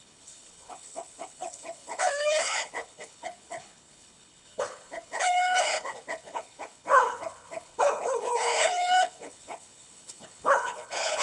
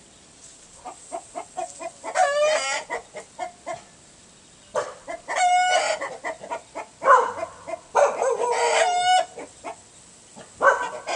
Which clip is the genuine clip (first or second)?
second